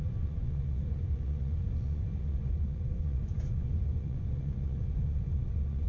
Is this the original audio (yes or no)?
no